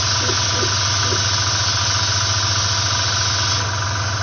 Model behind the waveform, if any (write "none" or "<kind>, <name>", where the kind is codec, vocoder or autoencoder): none